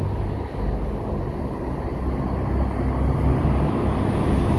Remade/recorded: recorded